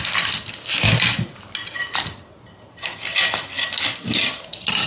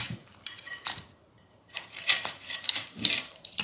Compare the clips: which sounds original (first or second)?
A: first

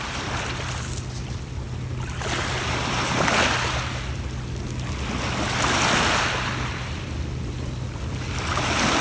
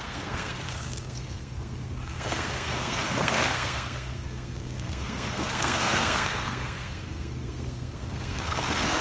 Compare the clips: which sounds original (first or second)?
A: first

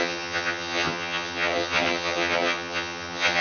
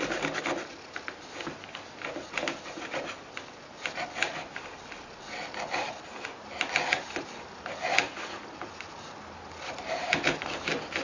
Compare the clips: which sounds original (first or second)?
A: second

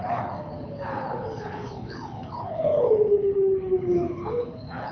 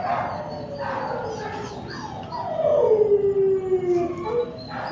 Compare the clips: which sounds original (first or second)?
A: second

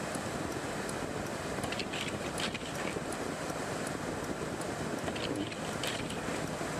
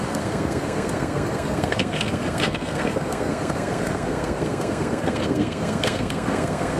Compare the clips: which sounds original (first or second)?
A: first